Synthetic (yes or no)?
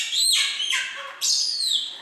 no